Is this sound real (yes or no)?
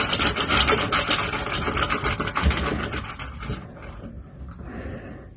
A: yes